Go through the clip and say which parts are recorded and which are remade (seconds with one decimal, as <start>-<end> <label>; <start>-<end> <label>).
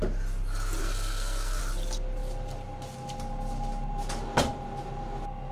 0.0-0.8 recorded; 0.8-1.6 remade; 1.6-5.5 recorded